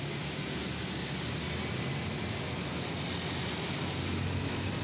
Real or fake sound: real